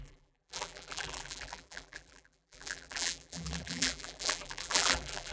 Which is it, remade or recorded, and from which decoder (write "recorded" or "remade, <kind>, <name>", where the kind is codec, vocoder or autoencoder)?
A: remade, vocoder, BigVGAN v2